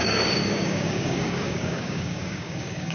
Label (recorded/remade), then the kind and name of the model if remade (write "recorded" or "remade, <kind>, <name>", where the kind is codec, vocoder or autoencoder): remade, codec, DAC